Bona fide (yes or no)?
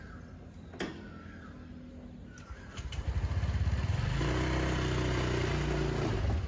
yes